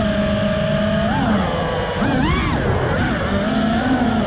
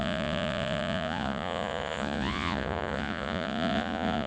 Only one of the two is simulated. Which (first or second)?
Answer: second